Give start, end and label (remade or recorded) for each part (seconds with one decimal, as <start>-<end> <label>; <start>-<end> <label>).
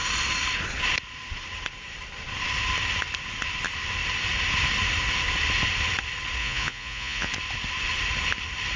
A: 0.0-6.4 recorded; 6.4-7.3 remade; 7.3-8.8 recorded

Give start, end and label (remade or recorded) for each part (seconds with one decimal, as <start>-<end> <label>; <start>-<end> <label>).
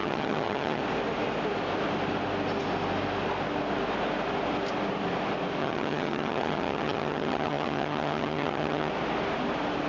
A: 0.0-0.8 remade; 0.8-5.6 recorded; 5.6-8.9 remade; 8.9-9.9 recorded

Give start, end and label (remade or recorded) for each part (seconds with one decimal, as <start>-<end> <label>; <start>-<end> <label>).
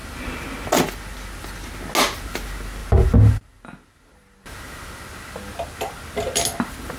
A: 0.0-7.0 recorded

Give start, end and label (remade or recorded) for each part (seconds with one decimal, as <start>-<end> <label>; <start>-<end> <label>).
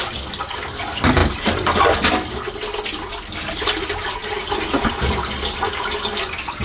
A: 0.0-6.6 recorded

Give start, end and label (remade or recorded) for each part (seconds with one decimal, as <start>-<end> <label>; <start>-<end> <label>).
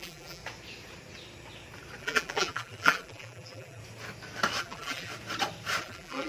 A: 0.0-0.4 remade; 0.4-2.0 recorded; 2.0-3.8 remade; 3.8-4.6 recorded; 4.6-5.1 remade; 5.1-5.8 recorded; 5.8-6.3 remade